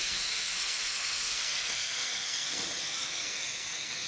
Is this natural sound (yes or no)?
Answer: no